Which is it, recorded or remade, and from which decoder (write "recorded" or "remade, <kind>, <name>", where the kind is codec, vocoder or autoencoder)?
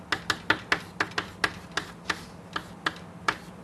recorded